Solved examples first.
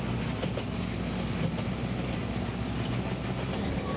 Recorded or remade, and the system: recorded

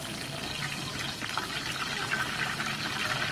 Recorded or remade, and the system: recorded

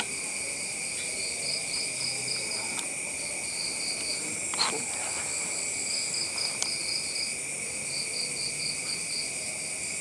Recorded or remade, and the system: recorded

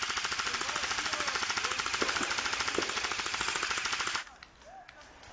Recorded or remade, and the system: recorded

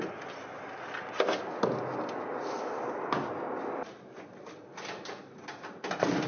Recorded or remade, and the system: recorded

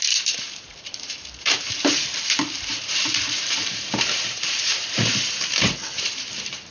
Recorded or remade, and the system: remade, vocoder, BigVGAN v2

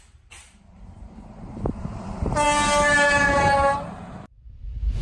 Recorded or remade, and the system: remade, vocoder, BigVGAN v2